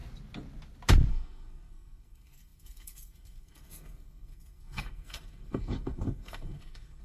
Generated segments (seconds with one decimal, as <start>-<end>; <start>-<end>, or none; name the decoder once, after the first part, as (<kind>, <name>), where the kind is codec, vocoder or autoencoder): 1.1-7.0 (codec, SNAC)